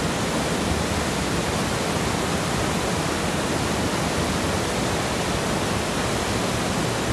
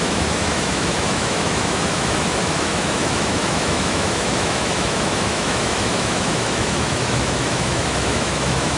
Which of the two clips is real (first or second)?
first